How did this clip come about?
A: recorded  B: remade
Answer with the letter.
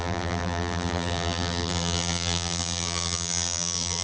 B